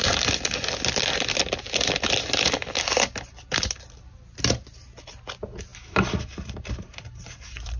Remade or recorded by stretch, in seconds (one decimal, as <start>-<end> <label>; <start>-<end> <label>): 0.0-5.7 recorded; 5.7-7.8 remade